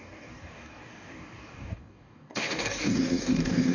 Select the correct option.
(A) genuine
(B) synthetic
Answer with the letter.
B